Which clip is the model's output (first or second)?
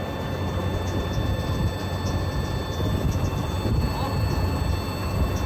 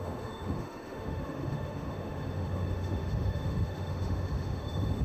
second